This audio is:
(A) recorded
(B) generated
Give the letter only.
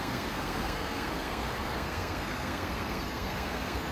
B